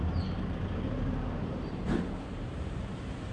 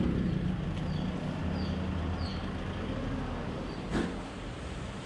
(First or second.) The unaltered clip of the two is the second